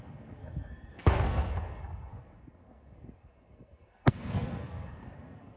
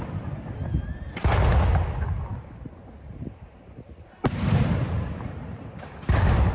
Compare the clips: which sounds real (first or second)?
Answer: second